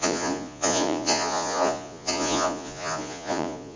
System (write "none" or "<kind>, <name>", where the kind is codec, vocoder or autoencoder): vocoder, Vocos